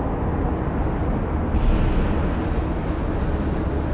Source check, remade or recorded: recorded